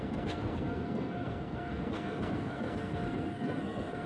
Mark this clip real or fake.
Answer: fake